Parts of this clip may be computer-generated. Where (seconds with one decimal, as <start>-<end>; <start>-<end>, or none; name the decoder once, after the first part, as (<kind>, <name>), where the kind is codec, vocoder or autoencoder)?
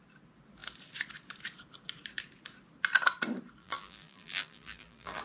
3.6-5.2 (vocoder, BigVGAN v2)